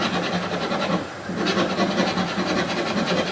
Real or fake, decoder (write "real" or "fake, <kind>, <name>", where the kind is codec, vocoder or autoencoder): real